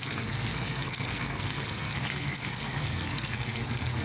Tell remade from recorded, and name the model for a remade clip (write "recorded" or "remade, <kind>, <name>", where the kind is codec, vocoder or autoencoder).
remade, codec, SNAC